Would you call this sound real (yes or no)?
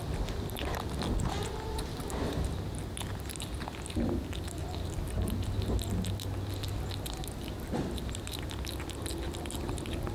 yes